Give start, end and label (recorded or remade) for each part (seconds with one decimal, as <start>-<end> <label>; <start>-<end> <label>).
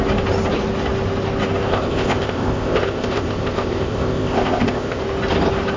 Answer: 0.0-1.7 recorded; 1.7-5.0 remade; 5.0-5.8 recorded